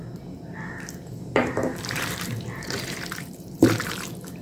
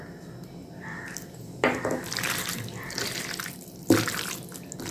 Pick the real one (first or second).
second